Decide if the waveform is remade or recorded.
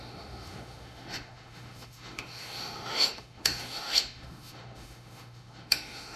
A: remade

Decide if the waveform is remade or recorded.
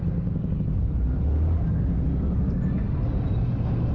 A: recorded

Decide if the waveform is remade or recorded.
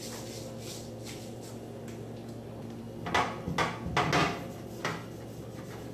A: recorded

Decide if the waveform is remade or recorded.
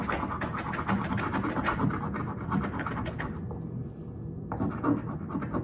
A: recorded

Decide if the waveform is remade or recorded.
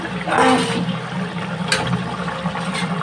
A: recorded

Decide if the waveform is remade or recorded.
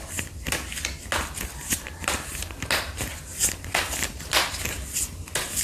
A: recorded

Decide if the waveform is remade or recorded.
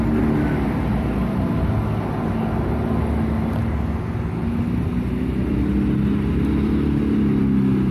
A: recorded